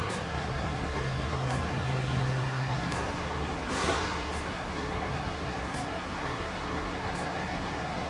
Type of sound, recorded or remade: remade